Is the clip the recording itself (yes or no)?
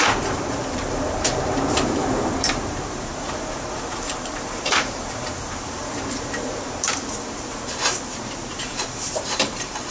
no